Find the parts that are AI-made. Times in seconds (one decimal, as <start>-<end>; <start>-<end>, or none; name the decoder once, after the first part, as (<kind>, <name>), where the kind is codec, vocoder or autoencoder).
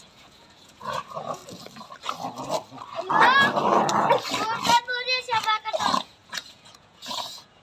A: 0.0-1.4 (vocoder, Vocos); 5.8-7.6